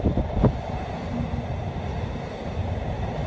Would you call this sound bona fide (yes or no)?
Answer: yes